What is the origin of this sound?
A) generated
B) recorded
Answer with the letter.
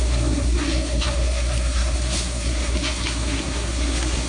A